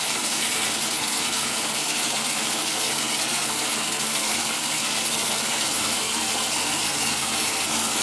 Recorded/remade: remade